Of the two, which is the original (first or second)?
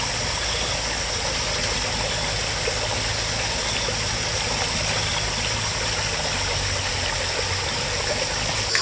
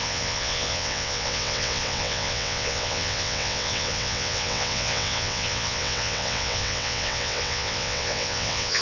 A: first